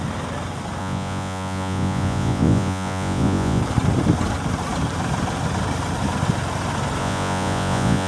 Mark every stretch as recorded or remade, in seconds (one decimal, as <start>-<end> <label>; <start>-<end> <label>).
0.0-0.8 recorded; 0.8-3.6 remade; 3.6-7.0 recorded; 7.0-8.1 remade